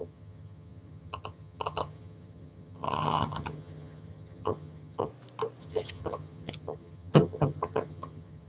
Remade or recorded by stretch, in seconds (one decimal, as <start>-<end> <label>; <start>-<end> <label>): 0.0-5.1 remade; 5.1-5.6 recorded; 5.6-8.5 remade